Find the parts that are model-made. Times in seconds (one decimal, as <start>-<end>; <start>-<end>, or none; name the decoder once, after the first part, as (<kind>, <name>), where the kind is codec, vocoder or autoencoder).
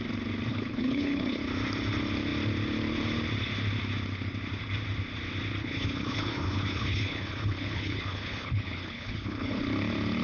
0.5-1.4 (codec, HILCodec); 5.6-9.6